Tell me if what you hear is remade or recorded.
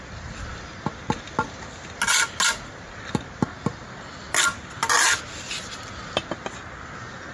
recorded